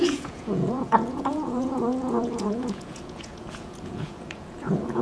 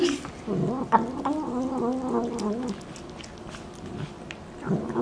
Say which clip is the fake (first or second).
first